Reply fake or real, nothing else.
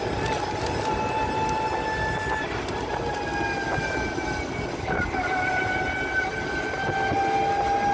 real